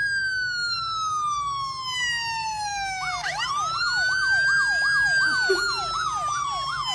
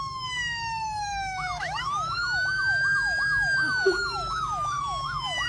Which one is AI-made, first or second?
second